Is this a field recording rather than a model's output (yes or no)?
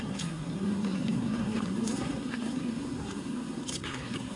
no